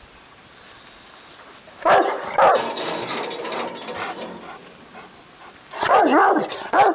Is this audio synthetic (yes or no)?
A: no